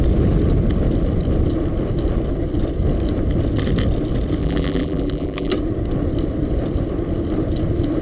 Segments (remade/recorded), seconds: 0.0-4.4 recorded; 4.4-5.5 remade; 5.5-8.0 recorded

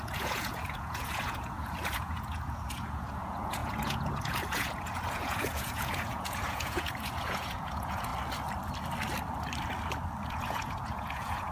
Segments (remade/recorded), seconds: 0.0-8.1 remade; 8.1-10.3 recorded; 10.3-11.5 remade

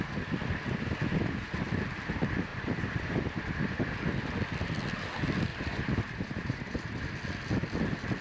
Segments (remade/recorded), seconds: 0.0-2.5 recorded; 2.5-3.4 remade; 3.4-5.5 recorded; 5.5-7.1 remade; 7.1-8.2 recorded

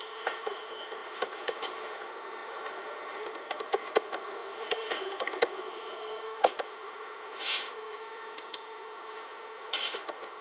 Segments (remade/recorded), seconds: 0.0-10.4 remade

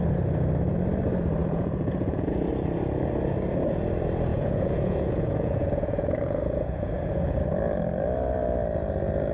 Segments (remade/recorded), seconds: 0.0-1.4 recorded; 1.4-2.5 remade; 2.5-4.3 recorded; 4.3-7.4 remade; 7.4-9.3 recorded

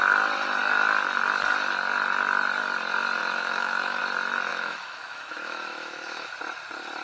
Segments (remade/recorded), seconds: 0.0-3.2 recorded; 3.2-4.0 remade; 4.0-4.5 recorded; 4.5-6.3 remade; 6.3-7.0 recorded

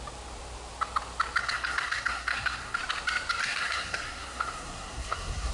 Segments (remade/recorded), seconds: 0.0-1.4 recorded; 1.4-2.8 remade; 2.8-3.4 recorded; 3.4-5.5 remade